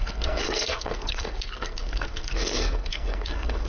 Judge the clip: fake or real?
fake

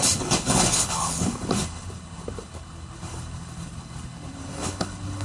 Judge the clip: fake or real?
fake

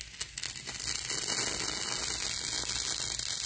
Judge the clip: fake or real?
real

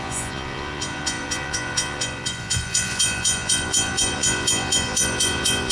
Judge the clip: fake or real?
fake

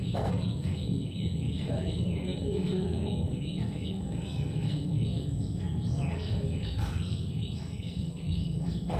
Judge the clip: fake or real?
fake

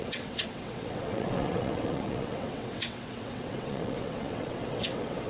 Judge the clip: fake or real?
fake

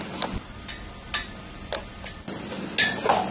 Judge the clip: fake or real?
real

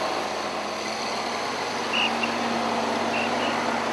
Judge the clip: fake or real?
real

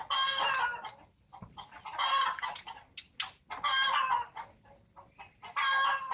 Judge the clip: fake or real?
real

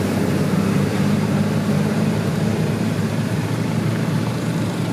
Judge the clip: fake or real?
fake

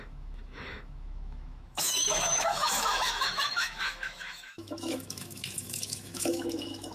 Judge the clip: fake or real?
fake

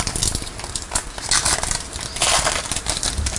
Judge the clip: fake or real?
real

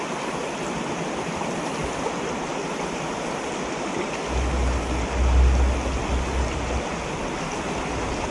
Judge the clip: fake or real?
real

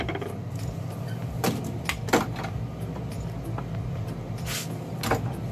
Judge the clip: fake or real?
real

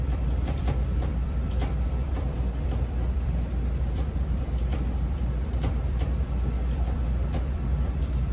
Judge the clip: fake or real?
fake